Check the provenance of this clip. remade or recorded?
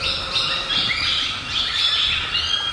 recorded